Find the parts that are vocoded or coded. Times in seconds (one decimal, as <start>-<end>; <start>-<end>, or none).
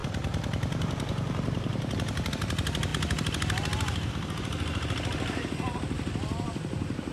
0.0-2.3